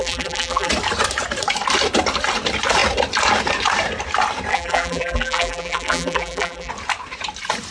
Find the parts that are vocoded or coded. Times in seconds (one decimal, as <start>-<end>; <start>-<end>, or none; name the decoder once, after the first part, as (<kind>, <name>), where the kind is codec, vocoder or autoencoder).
0.0-0.7 (vocoder, BigVGAN v2); 4.5-6.7